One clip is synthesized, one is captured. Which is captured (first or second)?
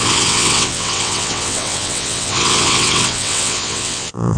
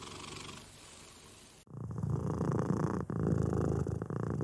second